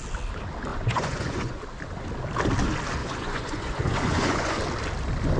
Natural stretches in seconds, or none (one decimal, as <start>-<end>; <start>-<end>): 0.0-0.7; 1.6-3.0; 4.6-5.4